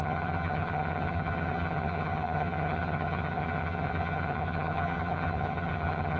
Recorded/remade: remade